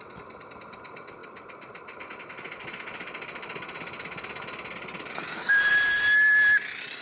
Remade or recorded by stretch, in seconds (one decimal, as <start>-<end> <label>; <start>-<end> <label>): 0.0-7.0 recorded